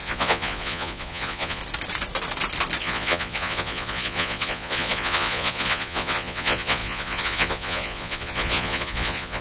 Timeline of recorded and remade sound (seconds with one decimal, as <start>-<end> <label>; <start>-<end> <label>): 0.0-1.6 remade; 1.6-2.8 recorded; 2.8-9.4 remade